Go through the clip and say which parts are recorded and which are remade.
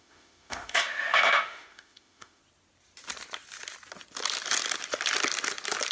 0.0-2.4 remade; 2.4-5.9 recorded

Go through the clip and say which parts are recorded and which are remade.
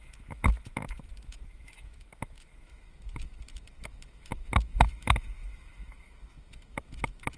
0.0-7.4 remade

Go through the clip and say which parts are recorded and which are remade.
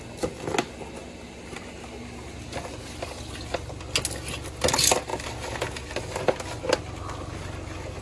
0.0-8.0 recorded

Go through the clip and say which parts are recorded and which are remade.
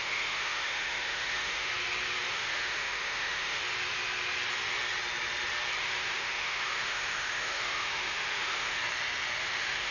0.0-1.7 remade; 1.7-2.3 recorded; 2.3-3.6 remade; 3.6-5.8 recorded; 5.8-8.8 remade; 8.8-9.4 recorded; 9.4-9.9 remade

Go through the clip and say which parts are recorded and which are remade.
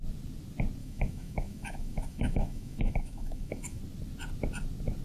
0.0-0.8 recorded; 0.8-3.8 remade; 3.8-5.0 recorded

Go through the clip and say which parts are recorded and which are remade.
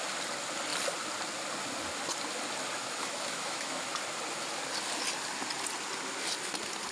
0.0-2.8 recorded; 2.8-3.8 remade; 3.8-6.9 recorded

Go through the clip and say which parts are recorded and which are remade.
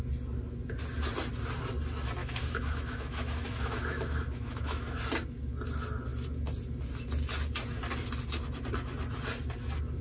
0.0-2.2 recorded; 2.2-5.0 remade; 5.0-10.0 recorded